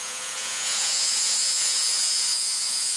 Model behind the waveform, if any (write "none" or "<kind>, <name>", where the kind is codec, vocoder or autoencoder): vocoder, Vocos